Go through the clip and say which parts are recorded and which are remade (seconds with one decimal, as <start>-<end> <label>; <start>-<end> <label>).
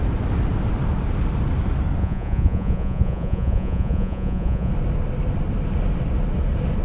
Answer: 0.0-2.0 recorded; 2.0-4.7 remade; 4.7-6.8 recorded